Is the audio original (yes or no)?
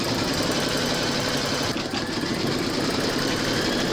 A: yes